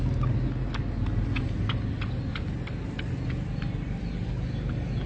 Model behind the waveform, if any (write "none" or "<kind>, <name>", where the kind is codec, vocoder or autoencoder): none